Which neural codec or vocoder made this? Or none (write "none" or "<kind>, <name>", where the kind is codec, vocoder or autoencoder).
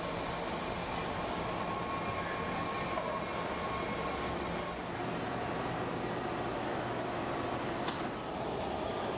none